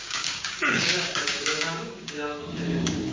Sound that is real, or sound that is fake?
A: fake